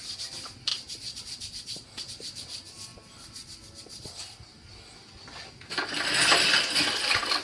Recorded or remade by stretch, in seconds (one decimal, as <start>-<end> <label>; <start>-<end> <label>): 0.0-7.4 recorded